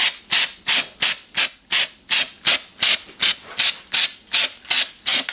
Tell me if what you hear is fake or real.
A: real